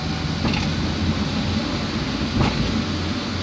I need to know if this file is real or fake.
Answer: real